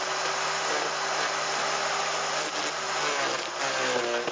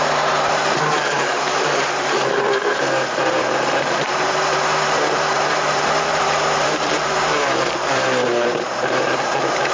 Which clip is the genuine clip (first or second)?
first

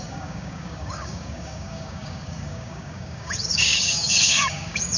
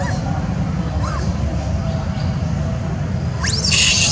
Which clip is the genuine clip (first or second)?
second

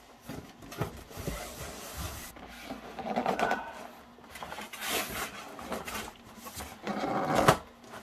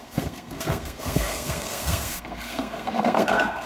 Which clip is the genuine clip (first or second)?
first